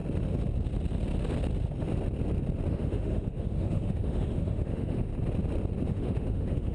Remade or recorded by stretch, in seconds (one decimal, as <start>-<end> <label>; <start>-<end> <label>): 0.0-2.7 recorded; 2.7-5.1 remade; 5.1-5.9 recorded; 5.9-6.7 remade